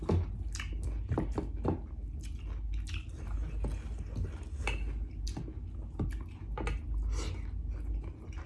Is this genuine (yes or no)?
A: yes